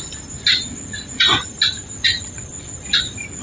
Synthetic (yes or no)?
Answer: no